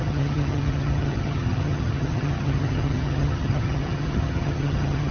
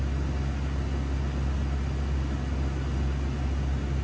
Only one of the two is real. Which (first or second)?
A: second